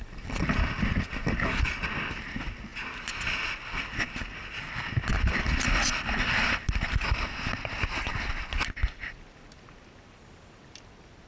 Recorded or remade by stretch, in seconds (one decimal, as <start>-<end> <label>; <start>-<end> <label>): 0.0-11.3 recorded